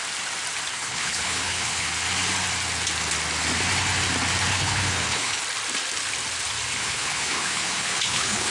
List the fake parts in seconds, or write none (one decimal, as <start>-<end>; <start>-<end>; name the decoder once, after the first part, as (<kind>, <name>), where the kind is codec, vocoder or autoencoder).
0.7-1.9 (codec, HILCodec); 4.5-5.4; 6.8-8.5